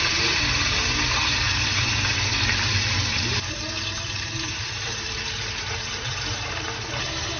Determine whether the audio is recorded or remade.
remade